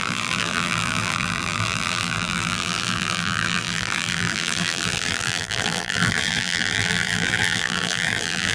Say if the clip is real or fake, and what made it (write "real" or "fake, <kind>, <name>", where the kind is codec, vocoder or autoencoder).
fake, vocoder, BigVGAN v2